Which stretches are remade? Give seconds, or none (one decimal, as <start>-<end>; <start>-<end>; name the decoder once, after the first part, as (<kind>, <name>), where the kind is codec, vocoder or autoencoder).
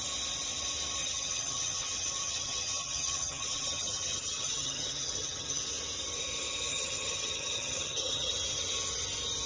1.0-5.6 (vocoder, HiFi-GAN); 6.7-8.3